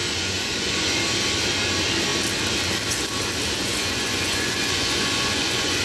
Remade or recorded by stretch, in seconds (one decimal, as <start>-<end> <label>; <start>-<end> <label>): 0.0-1.0 remade; 1.0-3.6 recorded; 3.6-5.8 remade